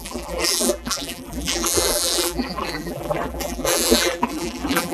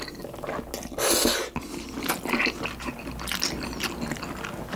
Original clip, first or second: second